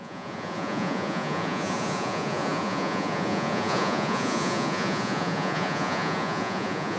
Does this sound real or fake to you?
fake